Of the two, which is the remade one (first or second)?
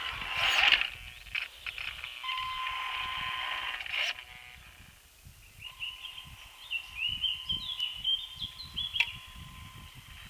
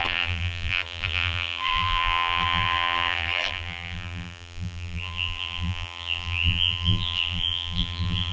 second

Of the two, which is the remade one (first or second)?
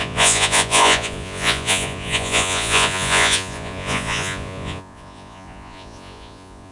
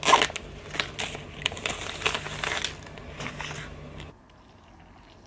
first